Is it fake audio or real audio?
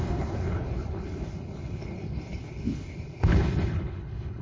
fake